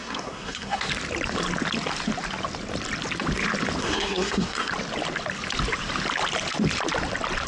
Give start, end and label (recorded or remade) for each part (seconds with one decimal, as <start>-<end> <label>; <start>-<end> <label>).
0.0-0.9 remade; 0.9-3.8 recorded; 3.8-4.7 remade; 4.7-7.5 recorded